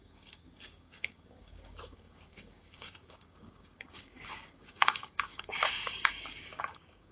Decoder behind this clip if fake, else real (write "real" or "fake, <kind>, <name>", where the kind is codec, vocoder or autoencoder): fake, codec, DAC